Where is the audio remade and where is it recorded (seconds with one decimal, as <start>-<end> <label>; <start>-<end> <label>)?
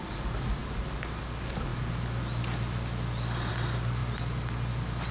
0.0-5.1 recorded